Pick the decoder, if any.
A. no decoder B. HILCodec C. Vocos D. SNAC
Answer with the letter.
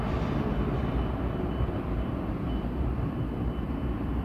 A